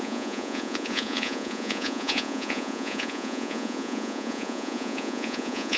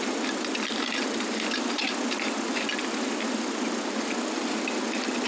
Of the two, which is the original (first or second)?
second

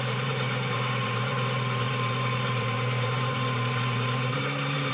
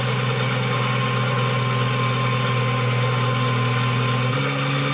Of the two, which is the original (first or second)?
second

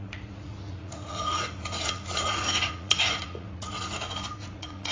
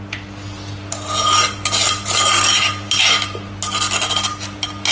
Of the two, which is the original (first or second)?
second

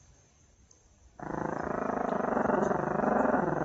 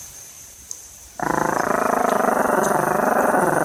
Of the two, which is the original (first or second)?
first